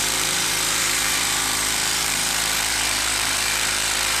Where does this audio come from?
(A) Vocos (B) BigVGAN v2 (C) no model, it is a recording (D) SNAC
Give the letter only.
B